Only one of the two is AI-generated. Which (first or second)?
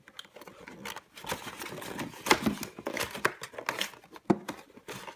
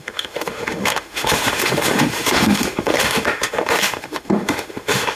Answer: second